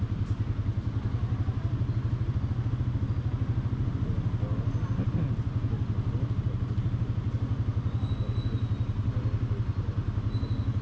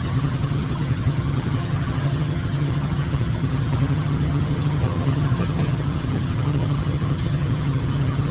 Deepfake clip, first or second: second